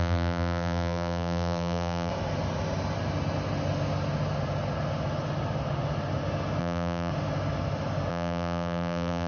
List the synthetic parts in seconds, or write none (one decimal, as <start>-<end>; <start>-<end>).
0.0-2.1; 6.6-7.1; 8.1-9.3